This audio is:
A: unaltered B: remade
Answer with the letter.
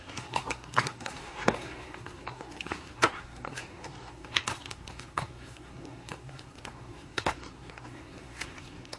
B